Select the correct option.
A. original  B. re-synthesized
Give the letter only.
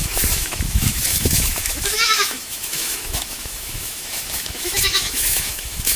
B